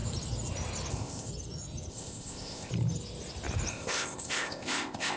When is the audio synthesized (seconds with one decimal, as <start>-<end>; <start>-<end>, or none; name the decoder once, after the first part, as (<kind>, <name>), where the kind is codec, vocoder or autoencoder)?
0.9-1.3 (codec, ZipCodec); 1.9-2.7; 3.7-5.2